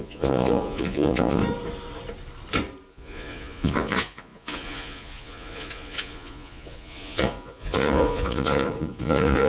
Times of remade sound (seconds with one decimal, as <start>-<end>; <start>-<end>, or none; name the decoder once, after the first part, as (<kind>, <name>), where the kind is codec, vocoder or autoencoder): 0.0-1.4 (vocoder, Vocos); 2.9-9.5

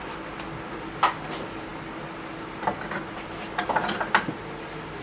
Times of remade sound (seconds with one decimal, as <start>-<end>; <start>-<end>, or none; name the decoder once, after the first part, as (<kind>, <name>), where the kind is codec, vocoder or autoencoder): none

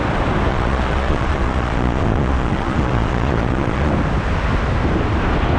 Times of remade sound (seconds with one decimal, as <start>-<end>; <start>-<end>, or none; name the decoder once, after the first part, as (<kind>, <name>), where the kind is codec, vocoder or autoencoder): 0.5-3.9 (vocoder, Vocos)

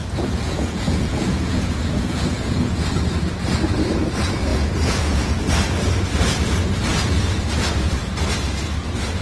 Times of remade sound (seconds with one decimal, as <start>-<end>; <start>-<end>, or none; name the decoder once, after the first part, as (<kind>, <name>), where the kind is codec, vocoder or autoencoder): 0.0-2.9 (vocoder, Vocos); 4.5-5.4

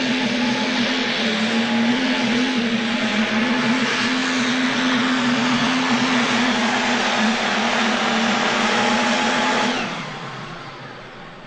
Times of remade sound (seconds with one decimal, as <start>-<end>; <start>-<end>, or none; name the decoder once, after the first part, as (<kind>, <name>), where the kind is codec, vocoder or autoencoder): 0.0-1.3 (vocoder, Vocos); 1.9-11.5

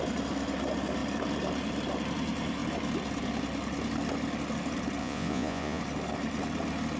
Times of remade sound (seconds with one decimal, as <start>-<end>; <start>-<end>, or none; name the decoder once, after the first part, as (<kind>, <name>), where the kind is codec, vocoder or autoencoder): 5.0-5.8 (vocoder, Vocos)